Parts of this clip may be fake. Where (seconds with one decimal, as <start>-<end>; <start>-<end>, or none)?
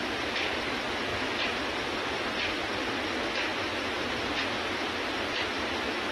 0.0-0.6; 3.5-5.1